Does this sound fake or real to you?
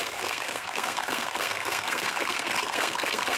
fake